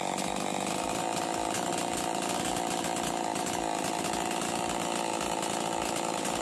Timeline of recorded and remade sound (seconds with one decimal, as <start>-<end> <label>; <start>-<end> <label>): 0.0-6.4 recorded